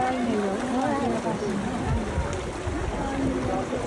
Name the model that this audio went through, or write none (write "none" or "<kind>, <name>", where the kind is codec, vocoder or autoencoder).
none